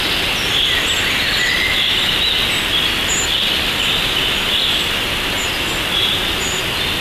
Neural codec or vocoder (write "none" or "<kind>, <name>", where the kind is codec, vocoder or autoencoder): none